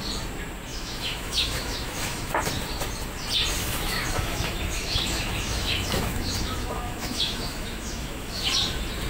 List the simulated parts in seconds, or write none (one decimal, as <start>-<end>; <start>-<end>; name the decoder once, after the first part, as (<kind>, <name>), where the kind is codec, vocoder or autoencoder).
0.7-2.3 (autoencoder, DAC-VAE); 3.6-8.4